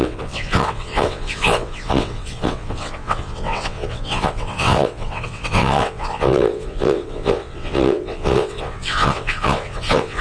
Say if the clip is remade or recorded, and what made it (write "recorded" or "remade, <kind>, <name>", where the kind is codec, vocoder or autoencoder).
remade, vocoder, WaveNeXt